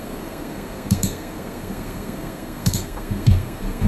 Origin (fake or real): fake